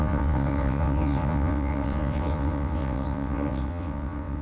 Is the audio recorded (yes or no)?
no